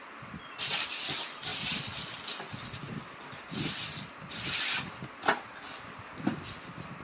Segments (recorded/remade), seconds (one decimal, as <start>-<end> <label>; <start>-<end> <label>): 0.0-7.0 recorded